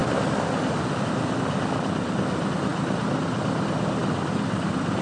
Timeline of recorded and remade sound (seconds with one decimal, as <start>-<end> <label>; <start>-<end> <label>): 0.0-4.0 recorded; 4.0-5.0 remade